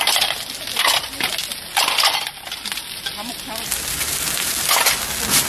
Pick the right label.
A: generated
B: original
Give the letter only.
B